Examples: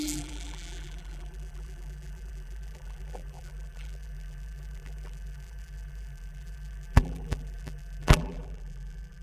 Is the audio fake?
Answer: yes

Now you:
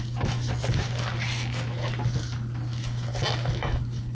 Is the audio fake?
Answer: no